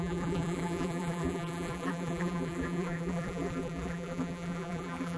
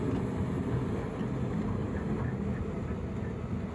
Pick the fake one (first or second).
first